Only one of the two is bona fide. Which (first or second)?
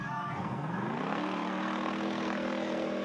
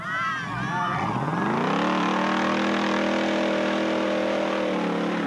second